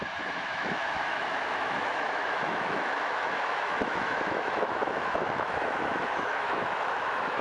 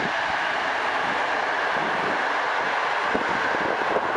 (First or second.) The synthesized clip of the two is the first